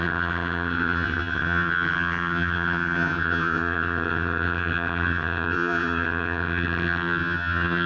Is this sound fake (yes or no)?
yes